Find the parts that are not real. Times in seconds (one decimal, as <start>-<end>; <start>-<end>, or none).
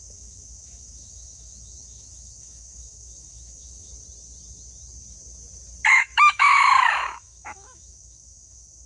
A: 0.0-3.9; 5.9-8.9